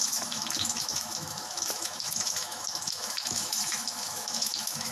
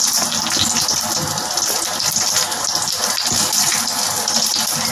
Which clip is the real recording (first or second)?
second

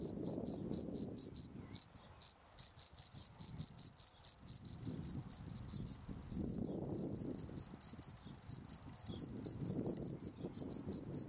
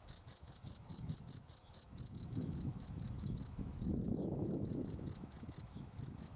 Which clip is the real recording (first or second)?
first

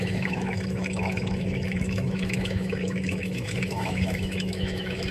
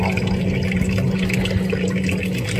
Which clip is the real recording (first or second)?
second